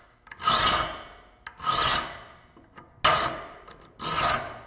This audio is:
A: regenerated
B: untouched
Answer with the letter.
B